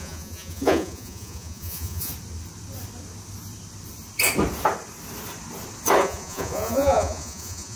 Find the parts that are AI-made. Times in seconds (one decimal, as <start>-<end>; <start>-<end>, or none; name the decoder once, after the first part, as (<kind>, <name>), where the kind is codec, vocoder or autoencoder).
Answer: 0.0-2.1 (vocoder, Vocos); 6.0-7.8